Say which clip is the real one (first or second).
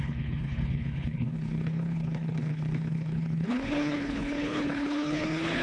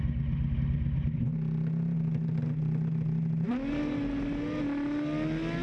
second